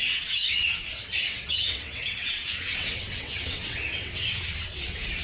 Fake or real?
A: fake